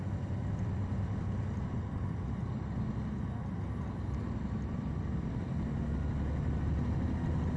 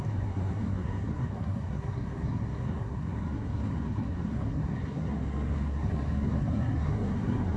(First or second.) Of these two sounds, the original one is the first